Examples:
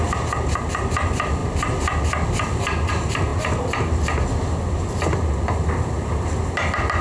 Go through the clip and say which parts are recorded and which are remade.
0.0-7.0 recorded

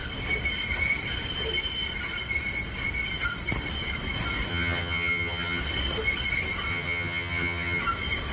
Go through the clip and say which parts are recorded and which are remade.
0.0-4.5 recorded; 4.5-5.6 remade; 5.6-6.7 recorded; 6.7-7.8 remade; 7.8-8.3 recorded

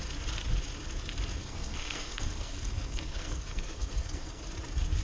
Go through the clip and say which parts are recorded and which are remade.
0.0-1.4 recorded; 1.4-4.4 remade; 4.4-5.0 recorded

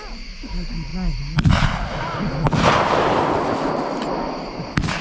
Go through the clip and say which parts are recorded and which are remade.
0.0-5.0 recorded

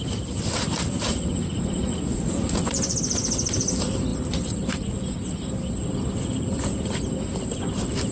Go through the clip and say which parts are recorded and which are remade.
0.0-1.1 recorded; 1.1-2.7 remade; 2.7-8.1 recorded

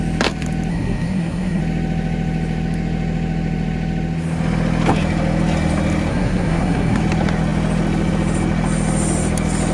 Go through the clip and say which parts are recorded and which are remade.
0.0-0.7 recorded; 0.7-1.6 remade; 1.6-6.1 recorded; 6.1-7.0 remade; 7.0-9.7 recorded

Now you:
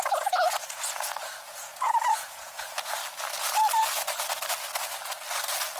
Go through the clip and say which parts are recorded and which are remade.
0.0-3.0 remade; 3.0-5.8 recorded

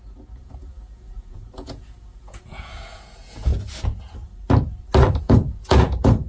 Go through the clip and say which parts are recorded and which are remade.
0.0-3.5 remade; 3.5-5.2 recorded; 5.2-6.3 remade